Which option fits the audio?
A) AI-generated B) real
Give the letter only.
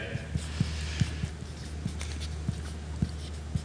B